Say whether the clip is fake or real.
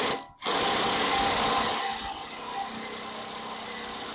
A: real